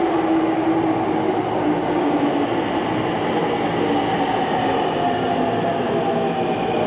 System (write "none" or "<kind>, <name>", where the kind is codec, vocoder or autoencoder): none